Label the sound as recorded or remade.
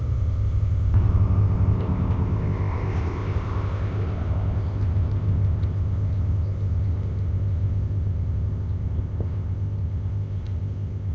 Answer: remade